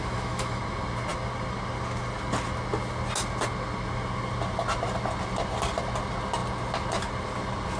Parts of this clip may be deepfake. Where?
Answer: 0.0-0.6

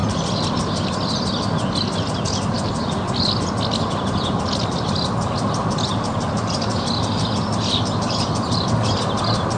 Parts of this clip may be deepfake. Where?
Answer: none

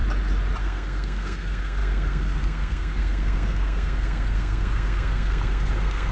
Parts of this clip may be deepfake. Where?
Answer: 0.6-6.1

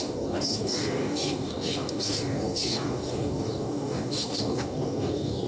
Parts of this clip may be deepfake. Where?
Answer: 0.0-5.5

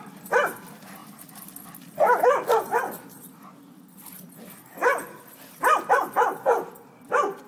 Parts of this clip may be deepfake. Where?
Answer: none

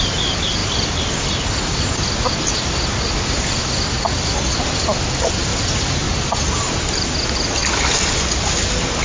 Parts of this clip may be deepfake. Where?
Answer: 5.5-6.8

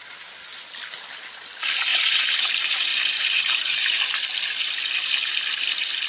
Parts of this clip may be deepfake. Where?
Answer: 1.9-2.5; 2.9-4.1

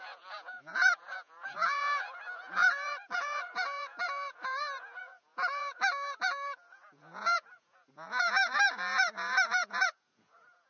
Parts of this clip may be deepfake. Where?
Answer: 0.0-10.7